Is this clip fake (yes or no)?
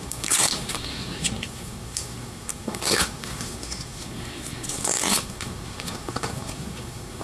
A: yes